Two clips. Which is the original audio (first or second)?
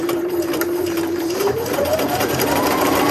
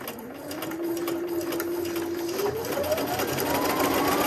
second